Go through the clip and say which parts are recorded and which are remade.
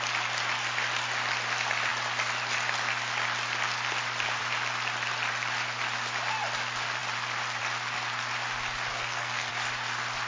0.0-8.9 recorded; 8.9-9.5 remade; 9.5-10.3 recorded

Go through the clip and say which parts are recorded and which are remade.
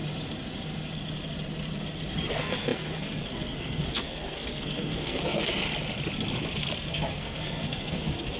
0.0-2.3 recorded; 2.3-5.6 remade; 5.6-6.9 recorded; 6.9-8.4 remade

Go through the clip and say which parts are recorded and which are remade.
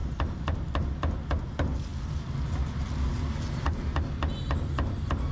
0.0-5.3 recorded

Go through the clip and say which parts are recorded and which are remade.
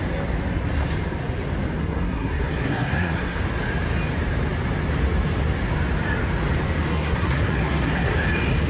0.0-1.8 recorded; 1.8-3.4 remade; 3.4-6.9 recorded; 6.9-8.1 remade; 8.1-8.7 recorded